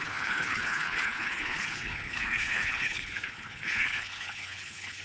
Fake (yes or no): yes